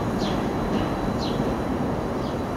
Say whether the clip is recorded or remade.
recorded